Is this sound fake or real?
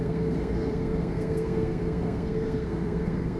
fake